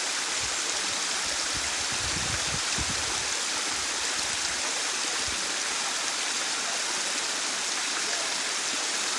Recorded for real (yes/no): yes